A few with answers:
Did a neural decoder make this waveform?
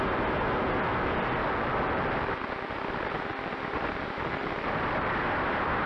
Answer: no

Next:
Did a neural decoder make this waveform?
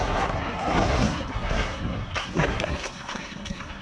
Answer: yes